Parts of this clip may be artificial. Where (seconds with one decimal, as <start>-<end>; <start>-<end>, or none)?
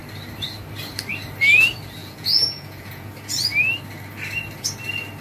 2.0-3.1